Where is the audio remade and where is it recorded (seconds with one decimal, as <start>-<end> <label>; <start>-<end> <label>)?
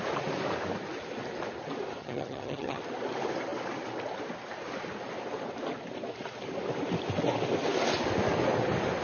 0.0-2.0 recorded; 2.0-2.8 remade; 2.8-9.0 recorded